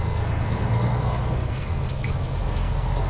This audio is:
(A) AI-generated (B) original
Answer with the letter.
A